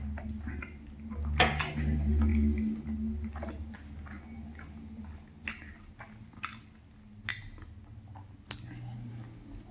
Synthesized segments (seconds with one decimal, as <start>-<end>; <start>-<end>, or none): none